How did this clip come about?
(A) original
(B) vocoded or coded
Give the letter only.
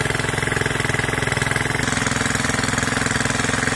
A